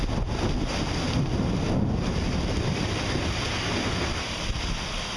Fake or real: real